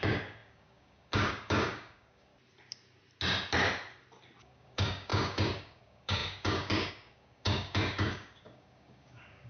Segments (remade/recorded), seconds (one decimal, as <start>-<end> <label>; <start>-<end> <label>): 0.0-2.3 remade; 2.3-4.4 recorded; 4.4-9.5 remade